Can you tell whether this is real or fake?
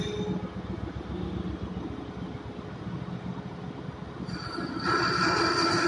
real